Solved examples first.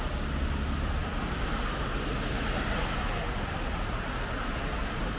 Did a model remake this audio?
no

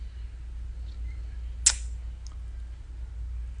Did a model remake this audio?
no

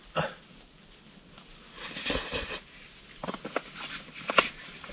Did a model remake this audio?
no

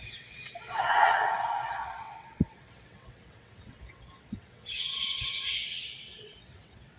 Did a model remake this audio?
yes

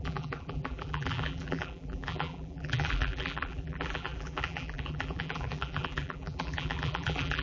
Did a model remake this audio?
yes